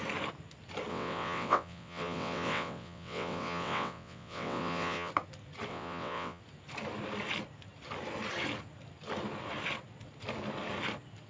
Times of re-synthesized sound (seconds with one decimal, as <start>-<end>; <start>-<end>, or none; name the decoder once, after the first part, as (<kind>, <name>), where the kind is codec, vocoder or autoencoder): 0.9-5.1 (vocoder, WaveNeXt); 5.7-6.4